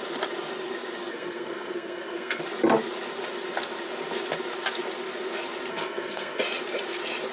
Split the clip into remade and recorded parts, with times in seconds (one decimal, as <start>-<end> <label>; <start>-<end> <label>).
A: 0.0-1.1 recorded; 1.1-2.4 remade; 2.4-5.7 recorded; 5.7-6.4 remade; 6.4-7.3 recorded